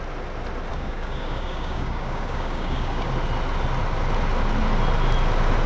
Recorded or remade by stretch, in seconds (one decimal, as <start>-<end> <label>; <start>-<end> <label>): 0.0-0.7 recorded; 0.7-3.1 remade; 3.1-5.7 recorded